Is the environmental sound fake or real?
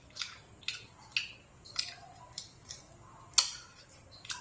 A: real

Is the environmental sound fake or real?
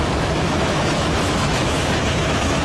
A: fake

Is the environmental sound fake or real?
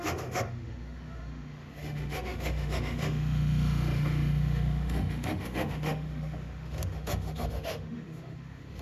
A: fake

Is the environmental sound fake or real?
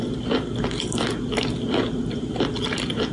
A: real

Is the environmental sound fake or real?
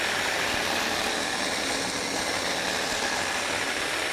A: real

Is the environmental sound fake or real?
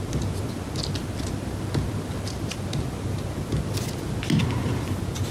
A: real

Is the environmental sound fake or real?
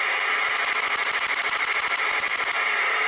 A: real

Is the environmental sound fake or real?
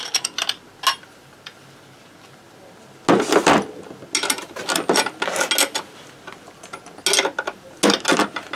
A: real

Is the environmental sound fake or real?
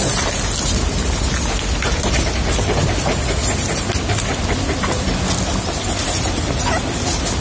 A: real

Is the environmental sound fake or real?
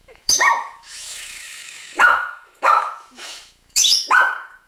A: fake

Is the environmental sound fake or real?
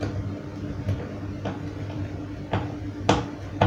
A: real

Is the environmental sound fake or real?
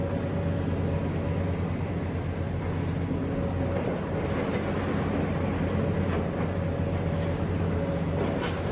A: real